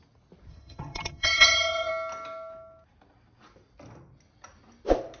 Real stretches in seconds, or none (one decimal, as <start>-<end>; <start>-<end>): 0.0-0.5; 1.9-5.2